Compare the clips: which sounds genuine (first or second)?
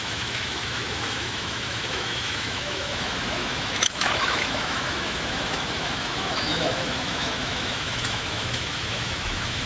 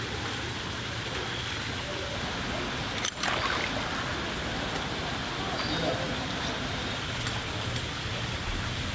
second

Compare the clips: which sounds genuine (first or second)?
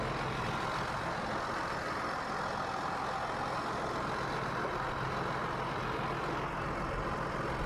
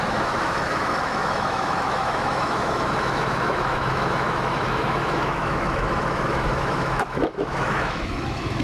first